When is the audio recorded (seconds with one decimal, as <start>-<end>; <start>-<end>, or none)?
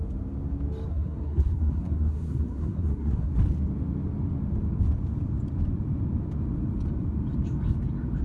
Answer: 0.0-0.9; 3.3-8.2